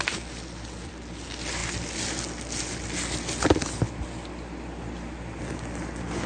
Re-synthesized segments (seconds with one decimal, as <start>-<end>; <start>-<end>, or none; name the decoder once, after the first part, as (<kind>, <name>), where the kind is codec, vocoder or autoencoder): none